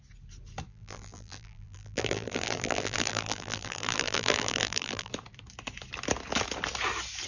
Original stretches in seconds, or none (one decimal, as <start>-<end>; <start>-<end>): 0.0-0.7; 5.1-7.3